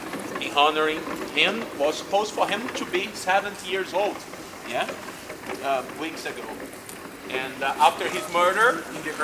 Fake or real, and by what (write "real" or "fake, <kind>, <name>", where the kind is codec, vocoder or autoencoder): real